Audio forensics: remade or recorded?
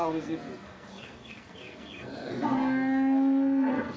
remade